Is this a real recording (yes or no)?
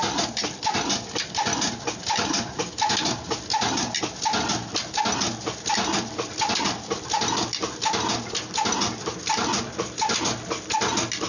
yes